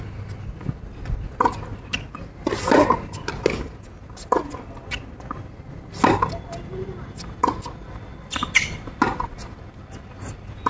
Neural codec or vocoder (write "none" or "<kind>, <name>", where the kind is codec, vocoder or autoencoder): none